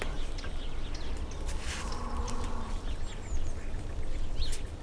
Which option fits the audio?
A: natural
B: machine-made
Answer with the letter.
A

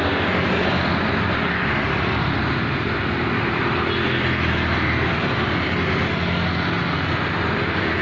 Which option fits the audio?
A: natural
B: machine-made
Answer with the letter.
A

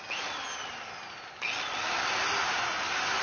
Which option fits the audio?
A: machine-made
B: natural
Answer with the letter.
B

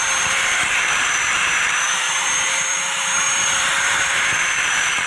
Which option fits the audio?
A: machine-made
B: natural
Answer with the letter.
A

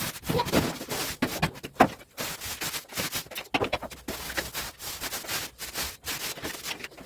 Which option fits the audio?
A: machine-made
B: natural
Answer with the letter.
B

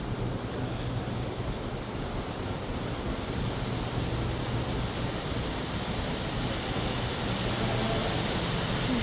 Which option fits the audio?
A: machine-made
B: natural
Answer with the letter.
B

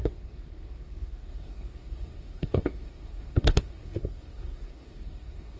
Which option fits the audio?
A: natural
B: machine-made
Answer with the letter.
B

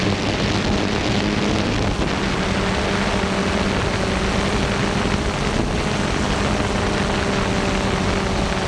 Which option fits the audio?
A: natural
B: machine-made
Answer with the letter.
A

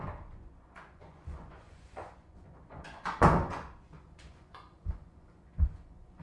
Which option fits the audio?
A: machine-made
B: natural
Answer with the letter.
A